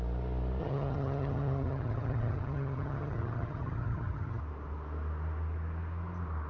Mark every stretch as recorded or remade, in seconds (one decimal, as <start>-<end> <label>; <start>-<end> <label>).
0.0-0.6 recorded; 0.6-4.4 remade; 4.4-6.5 recorded